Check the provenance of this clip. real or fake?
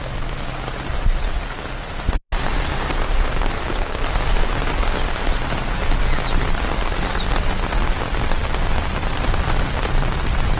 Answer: real